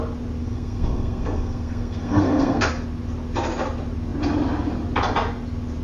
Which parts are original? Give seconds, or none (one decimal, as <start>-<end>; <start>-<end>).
0.0-0.4; 2.7-5.8